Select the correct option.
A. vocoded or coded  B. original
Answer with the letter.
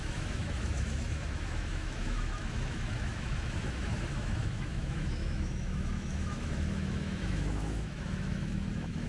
A